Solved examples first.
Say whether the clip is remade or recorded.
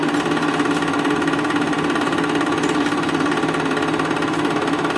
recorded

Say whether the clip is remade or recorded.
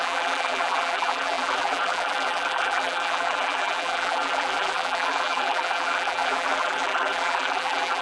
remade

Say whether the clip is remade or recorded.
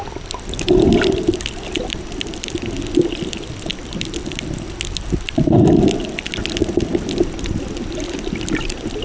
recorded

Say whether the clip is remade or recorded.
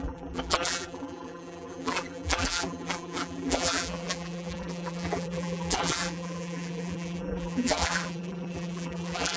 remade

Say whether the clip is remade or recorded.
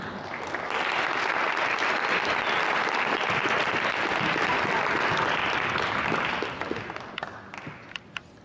recorded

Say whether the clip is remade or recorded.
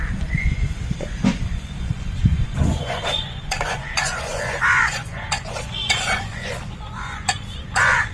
remade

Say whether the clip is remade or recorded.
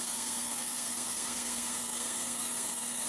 remade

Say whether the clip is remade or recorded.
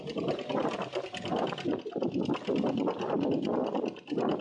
recorded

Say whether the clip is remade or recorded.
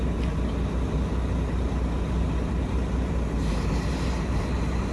recorded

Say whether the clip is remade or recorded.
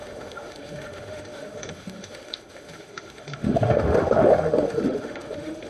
remade